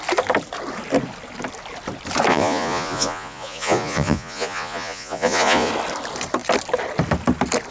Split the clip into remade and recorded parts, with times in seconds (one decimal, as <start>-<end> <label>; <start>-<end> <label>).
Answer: 0.0-2.3 recorded; 2.3-5.7 remade; 5.7-7.7 recorded